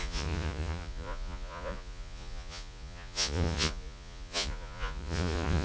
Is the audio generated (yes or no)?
yes